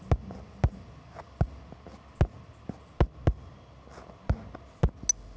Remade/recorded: recorded